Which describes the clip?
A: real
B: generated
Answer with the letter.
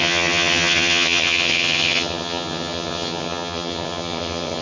B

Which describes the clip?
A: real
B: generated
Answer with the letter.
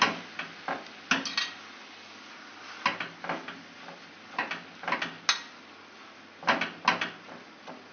A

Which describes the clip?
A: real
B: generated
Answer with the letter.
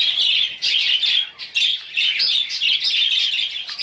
A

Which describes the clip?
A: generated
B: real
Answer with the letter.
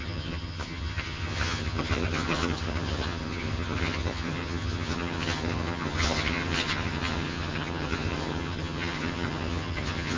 A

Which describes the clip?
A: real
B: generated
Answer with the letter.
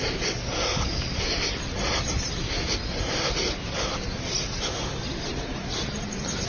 A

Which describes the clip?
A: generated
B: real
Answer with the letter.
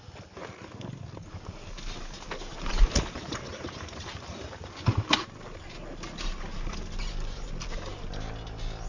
B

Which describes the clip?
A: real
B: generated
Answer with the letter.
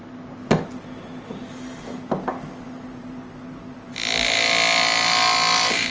A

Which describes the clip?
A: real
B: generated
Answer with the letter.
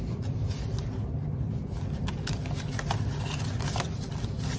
A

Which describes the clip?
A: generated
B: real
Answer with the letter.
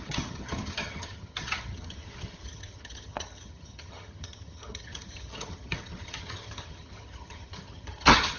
A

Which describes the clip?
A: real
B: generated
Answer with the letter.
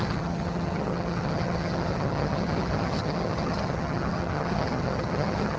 B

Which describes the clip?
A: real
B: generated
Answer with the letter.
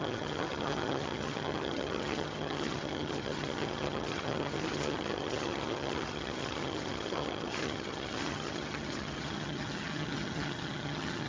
B